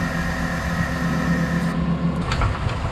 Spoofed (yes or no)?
no